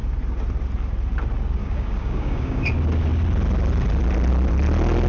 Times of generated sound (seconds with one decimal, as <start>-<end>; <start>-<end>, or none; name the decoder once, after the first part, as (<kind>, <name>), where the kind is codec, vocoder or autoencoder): 1.6-2.6 (codec, DAC)